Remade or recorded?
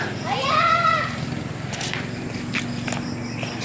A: recorded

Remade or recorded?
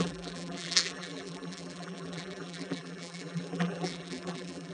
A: remade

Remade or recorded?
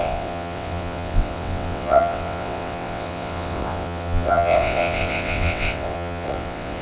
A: remade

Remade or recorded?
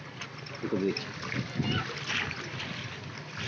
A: recorded